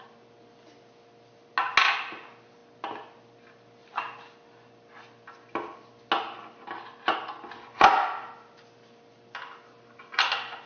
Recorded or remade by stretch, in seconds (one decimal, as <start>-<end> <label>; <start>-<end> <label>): 0.0-10.7 recorded

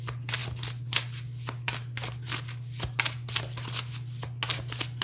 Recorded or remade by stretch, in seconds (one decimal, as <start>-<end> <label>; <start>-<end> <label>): 0.0-5.0 recorded

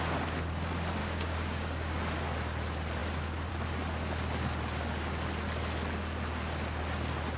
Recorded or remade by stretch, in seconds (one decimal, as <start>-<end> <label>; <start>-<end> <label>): 0.0-1.0 recorded; 1.0-2.0 remade; 2.0-7.4 recorded